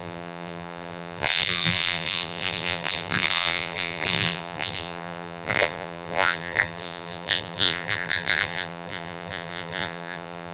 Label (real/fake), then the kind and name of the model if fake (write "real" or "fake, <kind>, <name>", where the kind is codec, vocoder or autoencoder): fake, vocoder, BigVGAN v2